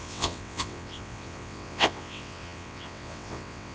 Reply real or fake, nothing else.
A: fake